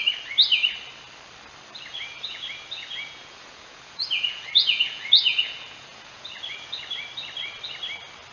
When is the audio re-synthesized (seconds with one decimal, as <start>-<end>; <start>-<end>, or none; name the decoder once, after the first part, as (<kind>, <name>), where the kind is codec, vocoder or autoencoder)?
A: 1.9-6.8 (vocoder, Vocos)